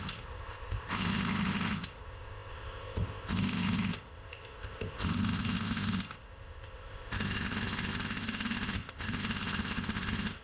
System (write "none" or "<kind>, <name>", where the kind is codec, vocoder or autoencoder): codec, ZipCodec